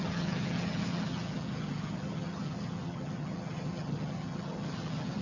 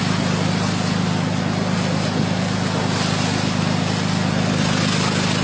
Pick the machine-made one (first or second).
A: first